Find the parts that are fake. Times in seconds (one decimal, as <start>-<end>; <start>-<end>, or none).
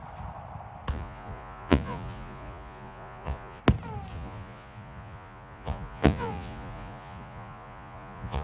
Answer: 0.9-3.6; 4.1-8.4